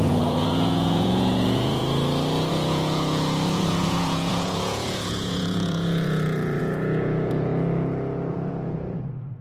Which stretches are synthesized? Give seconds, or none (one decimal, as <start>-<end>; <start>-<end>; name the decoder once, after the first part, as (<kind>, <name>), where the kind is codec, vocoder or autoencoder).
0.0-1.8 (vocoder, Vocos); 2.5-7.5; 8.3-9.4